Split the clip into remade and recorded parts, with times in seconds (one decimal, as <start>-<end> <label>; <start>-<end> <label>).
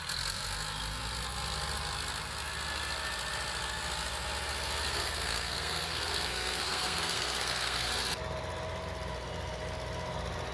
0.0-4.9 recorded; 4.9-7.9 remade; 7.9-10.5 recorded